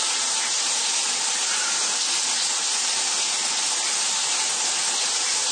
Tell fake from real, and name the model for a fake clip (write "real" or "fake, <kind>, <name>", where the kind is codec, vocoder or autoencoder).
real